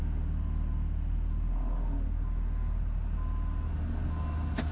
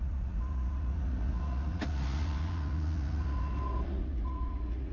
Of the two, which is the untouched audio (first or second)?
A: first